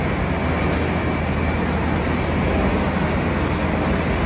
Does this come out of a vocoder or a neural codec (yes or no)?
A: no